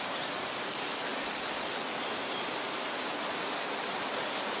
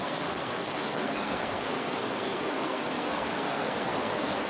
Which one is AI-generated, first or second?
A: second